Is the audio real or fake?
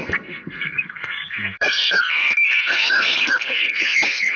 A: fake